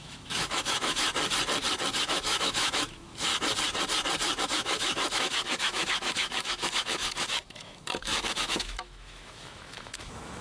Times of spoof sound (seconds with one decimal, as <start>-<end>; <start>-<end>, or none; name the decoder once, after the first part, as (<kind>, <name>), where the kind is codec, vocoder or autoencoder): 0.0-1.1 (autoencoder, DAC-VAE); 2.0-3.3; 4.4-10.4